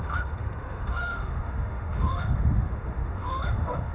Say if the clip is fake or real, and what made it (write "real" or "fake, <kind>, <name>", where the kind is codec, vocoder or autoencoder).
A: fake, autoencoder, DAC-VAE